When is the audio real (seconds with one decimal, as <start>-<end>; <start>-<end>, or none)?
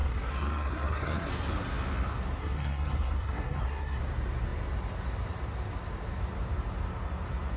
1.3-2.4; 4.0-7.6